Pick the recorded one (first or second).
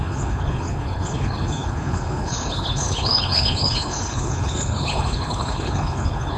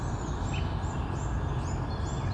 second